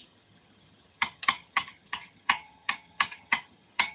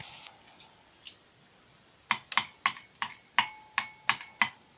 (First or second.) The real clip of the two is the second